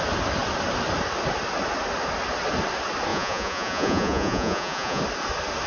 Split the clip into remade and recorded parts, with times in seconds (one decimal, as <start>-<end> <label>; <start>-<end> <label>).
0.0-3.1 recorded; 3.1-5.0 remade; 5.0-5.7 recorded

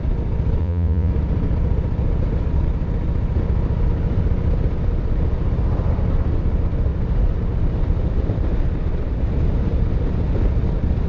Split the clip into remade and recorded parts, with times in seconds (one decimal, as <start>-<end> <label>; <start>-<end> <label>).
0.0-0.6 recorded; 0.6-1.1 remade; 1.1-11.1 recorded